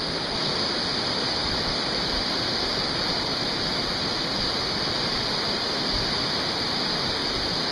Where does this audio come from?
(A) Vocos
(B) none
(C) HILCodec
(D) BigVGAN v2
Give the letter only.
B